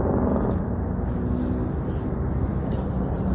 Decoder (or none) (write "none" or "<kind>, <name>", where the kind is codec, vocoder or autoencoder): none